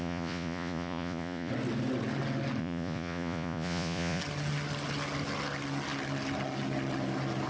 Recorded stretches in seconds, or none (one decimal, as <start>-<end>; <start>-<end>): 1.5-2.6; 4.2-7.5